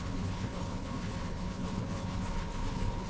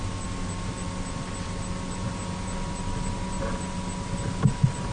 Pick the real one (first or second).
second